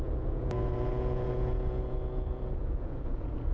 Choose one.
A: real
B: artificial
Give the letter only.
B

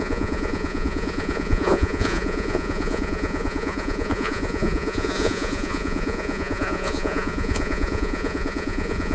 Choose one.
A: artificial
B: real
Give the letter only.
A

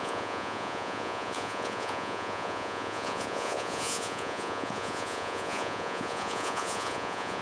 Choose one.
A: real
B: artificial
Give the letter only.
B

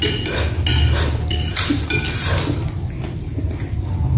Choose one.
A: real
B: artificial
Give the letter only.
A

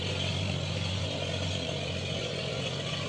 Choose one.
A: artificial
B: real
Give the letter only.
A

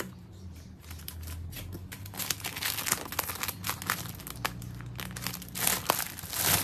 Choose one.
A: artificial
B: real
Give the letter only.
B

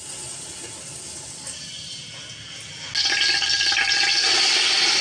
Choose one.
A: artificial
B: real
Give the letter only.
B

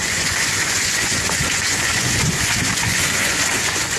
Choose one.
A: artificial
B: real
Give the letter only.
A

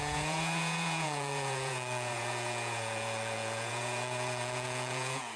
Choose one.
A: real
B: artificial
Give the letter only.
B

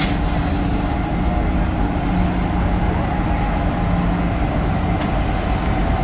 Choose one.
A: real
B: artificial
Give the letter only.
A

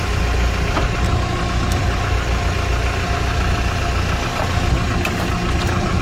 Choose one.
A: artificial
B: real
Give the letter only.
B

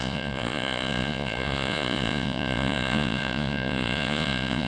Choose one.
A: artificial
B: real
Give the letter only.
A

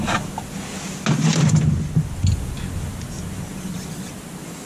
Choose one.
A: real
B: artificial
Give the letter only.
A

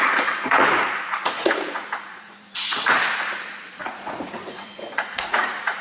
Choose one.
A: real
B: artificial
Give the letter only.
B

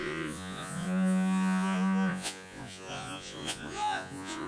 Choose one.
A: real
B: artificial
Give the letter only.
B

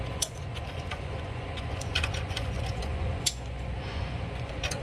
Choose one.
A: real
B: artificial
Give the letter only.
B